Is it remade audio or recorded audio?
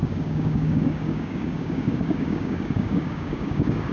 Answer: remade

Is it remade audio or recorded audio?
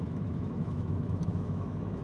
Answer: remade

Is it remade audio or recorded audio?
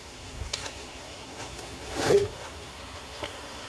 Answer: remade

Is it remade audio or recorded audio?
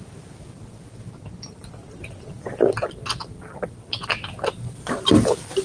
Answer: recorded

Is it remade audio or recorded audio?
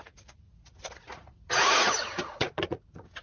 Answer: remade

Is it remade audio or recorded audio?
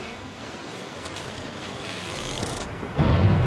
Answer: remade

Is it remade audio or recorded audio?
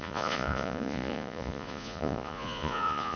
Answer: remade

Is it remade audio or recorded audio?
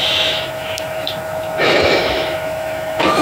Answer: remade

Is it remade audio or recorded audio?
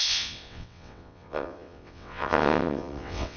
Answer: remade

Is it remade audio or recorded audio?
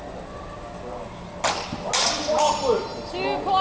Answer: recorded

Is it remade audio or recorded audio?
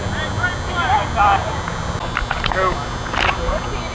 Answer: recorded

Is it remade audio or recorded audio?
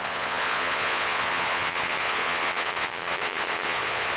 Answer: remade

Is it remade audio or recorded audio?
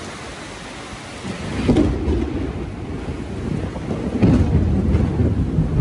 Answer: recorded